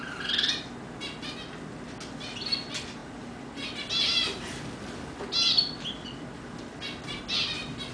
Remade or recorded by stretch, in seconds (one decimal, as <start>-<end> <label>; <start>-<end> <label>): 0.0-7.9 recorded